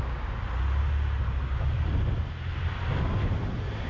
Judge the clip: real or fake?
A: real